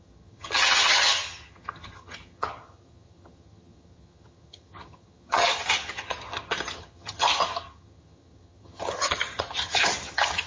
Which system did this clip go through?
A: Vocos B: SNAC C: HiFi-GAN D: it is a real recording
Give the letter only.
C